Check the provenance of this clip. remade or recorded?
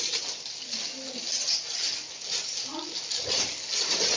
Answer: recorded